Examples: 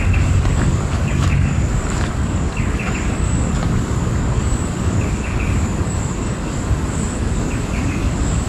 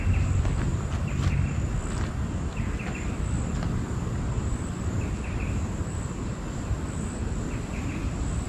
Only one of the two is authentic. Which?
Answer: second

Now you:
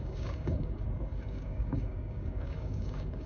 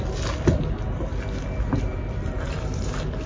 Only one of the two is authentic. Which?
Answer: second